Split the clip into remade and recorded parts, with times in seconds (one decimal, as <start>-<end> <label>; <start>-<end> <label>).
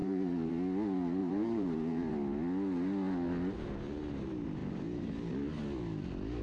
0.0-0.5 remade; 0.5-1.2 recorded; 1.2-2.1 remade; 2.1-6.4 recorded